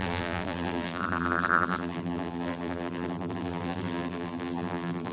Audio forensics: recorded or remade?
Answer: remade